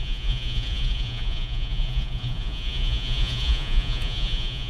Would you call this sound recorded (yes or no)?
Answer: no